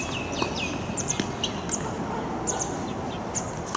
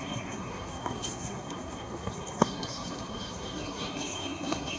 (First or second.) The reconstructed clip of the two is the second